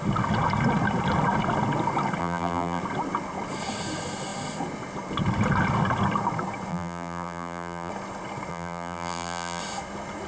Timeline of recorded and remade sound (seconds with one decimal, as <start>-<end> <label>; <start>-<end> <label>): 0.0-2.2 recorded; 2.2-2.8 remade; 2.8-6.7 recorded; 6.7-7.9 remade; 7.9-8.5 recorded; 8.5-9.6 remade; 9.6-10.3 recorded

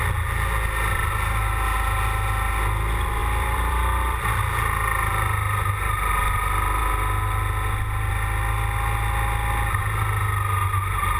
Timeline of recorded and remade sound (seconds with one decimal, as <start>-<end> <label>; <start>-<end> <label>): 0.0-3.2 recorded; 3.2-4.4 remade; 4.4-11.2 recorded

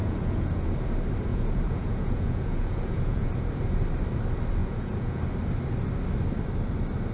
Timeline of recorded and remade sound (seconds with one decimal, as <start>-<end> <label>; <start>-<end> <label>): 0.0-0.7 remade; 0.7-1.3 recorded; 1.3-3.3 remade; 3.3-4.6 recorded; 4.6-5.2 remade; 5.2-7.1 recorded

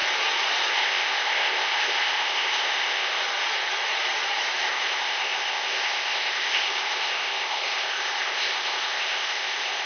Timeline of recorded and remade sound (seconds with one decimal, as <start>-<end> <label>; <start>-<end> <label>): 0.0-0.7 recorded; 0.7-3.2 remade; 3.2-4.6 recorded; 4.6-9.9 remade

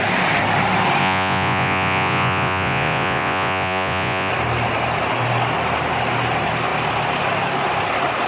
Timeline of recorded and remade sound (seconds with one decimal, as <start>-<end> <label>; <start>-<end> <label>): 0.0-1.0 recorded; 1.0-4.3 remade; 4.3-8.3 recorded